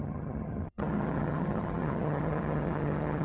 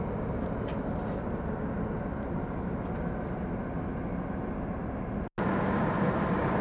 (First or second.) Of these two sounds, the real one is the second